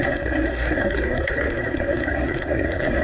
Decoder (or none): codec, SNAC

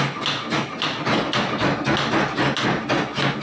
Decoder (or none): none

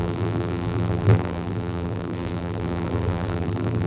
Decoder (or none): vocoder, BigVGAN v2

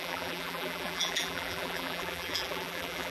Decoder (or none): vocoder, BigVGAN v2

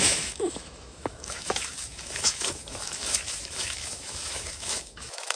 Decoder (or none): autoencoder, DAC-VAE